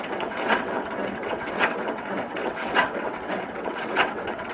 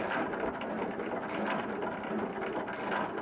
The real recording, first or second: second